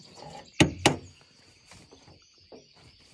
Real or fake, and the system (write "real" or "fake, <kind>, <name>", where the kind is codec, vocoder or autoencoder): real